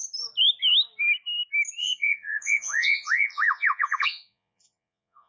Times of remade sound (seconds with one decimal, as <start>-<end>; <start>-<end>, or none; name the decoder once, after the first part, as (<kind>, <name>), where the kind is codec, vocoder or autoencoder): 1.8-5.3 (vocoder, Vocos)